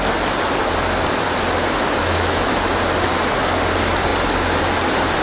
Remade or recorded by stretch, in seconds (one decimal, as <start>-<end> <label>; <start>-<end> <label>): 0.0-2.0 recorded; 2.0-2.5 remade; 2.5-5.2 recorded